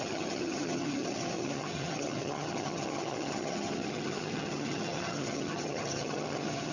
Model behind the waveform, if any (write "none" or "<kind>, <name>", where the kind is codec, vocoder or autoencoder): vocoder, HiFi-GAN